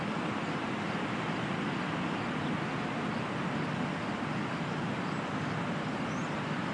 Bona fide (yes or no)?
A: yes